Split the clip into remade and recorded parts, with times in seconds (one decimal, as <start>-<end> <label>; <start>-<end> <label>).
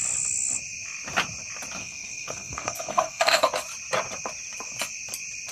0.0-1.8 recorded; 1.8-3.4 remade; 3.4-5.5 recorded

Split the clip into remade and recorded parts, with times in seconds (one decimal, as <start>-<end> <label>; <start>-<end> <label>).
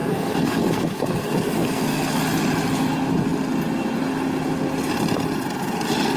0.0-2.2 remade; 2.2-6.2 recorded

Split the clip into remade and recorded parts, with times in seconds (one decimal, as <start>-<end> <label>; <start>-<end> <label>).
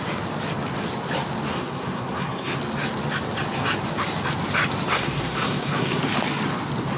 0.0-1.5 recorded; 1.5-2.6 remade; 2.6-4.9 recorded; 4.9-6.0 remade; 6.0-7.0 recorded